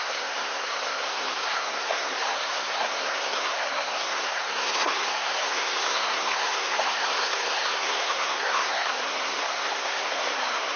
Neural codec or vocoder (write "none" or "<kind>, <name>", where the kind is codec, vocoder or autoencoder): codec, SNAC